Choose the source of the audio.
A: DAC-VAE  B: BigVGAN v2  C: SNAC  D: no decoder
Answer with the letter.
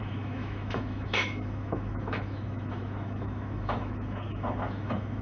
A